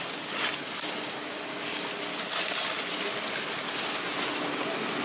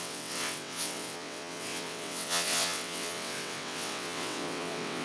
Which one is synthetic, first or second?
second